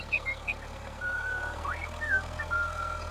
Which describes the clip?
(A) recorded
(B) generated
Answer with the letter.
B